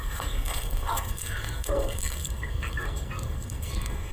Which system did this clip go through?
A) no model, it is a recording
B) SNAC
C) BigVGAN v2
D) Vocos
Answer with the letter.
B